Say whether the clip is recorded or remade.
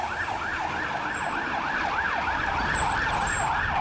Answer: recorded